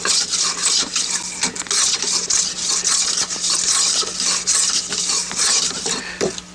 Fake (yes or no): no